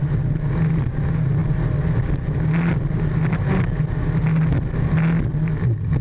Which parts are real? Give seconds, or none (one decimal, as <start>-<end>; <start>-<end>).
0.0-6.0